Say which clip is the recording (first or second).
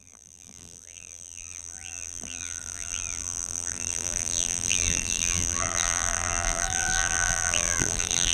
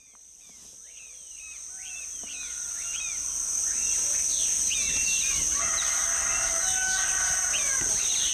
second